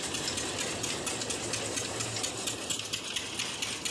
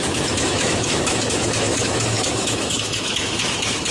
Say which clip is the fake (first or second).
second